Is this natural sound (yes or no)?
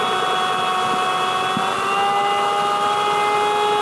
yes